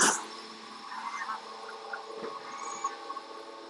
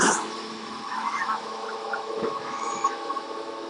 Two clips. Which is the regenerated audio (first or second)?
second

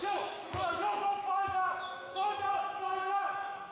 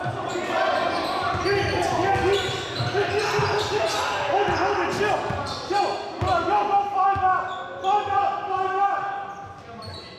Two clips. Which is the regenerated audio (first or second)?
first